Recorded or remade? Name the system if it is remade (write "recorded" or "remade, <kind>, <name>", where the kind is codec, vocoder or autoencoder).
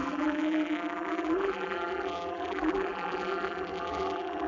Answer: remade, vocoder, BigVGAN v2